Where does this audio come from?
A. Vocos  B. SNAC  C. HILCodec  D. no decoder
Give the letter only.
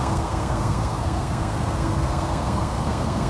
B